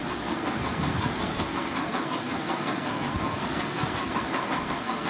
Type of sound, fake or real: fake